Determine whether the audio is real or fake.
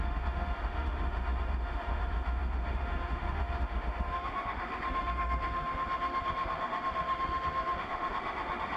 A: fake